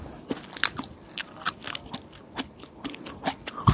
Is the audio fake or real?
real